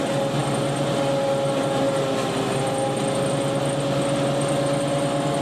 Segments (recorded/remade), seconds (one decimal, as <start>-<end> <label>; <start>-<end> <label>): 0.0-5.4 recorded